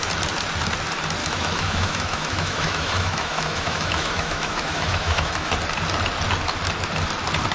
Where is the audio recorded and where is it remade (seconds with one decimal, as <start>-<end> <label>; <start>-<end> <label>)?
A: 0.0-1.2 recorded; 1.2-5.5 remade; 5.5-7.5 recorded